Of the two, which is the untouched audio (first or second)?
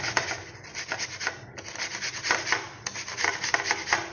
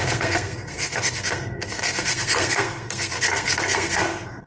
first